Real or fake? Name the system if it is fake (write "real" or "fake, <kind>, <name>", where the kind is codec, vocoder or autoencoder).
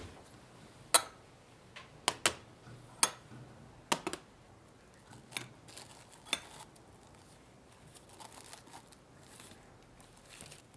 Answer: real